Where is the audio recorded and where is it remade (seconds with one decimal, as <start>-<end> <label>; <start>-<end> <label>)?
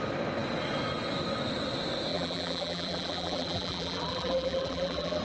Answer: 0.0-2.1 recorded; 2.1-5.2 remade